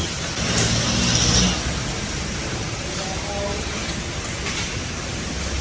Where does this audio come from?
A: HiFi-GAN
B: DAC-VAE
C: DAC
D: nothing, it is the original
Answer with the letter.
D